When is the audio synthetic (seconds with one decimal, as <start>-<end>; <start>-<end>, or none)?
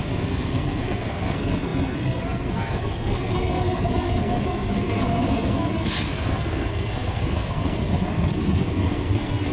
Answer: 0.0-9.5